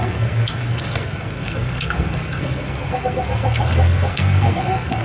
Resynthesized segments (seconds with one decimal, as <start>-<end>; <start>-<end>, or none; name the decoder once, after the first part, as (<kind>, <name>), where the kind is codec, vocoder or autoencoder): 0.0-5.0 (codec, SNAC)